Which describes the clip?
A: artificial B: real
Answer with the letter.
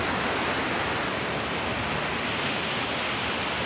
B